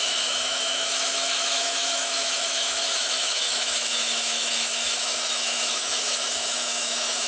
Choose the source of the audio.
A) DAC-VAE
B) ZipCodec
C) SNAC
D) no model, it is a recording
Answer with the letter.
A